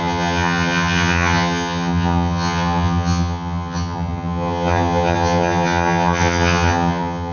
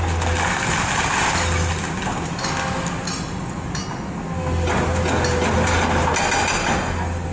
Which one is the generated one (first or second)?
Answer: first